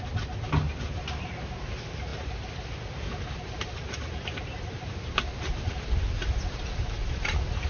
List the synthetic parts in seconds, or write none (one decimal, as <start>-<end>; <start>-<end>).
none